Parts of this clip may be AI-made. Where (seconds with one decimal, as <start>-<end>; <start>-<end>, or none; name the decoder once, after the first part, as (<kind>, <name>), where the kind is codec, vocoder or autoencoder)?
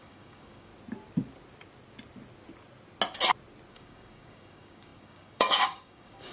0.0-0.7 (codec, DAC); 3.7-6.3